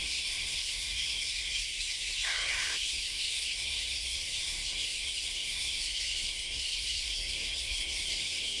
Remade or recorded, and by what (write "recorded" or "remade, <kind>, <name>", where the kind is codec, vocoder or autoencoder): remade, codec, SNAC